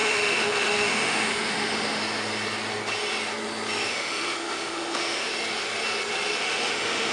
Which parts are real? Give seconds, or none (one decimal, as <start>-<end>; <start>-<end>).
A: 2.0-3.9; 5.3-6.4